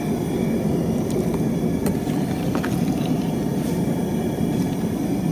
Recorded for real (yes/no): yes